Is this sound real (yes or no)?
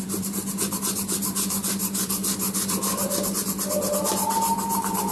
yes